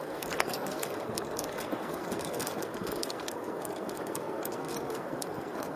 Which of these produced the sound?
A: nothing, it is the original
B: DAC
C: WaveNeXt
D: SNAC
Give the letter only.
D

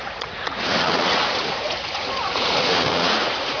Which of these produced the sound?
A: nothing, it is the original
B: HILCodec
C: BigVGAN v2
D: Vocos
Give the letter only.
D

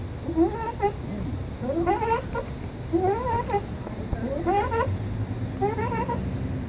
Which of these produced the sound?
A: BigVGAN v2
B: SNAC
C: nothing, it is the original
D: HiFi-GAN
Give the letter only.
C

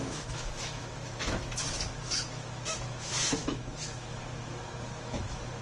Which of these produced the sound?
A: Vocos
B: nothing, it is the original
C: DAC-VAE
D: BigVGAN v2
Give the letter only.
C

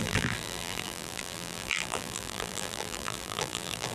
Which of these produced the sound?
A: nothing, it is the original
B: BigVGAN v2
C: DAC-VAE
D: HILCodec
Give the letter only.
B